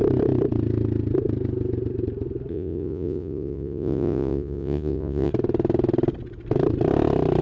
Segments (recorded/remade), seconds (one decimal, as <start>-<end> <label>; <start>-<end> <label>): 0.0-2.5 recorded; 2.5-5.3 remade; 5.3-7.4 recorded